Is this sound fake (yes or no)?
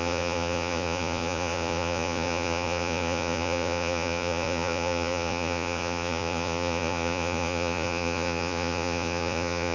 yes